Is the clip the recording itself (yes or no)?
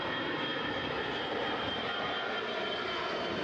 no